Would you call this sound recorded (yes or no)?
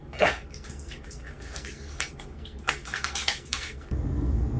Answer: no